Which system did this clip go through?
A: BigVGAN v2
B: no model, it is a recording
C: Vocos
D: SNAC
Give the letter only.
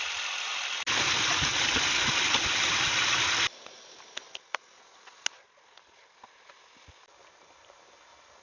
B